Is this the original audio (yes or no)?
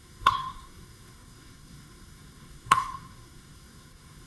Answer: no